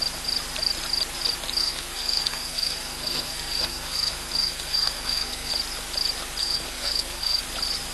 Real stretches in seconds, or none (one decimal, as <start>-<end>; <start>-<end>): 0.0-1.6; 5.5-6.4; 7.4-7.9